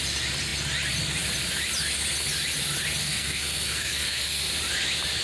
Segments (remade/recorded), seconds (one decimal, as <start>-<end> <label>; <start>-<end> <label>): 0.0-3.0 recorded; 3.0-4.5 remade; 4.5-5.2 recorded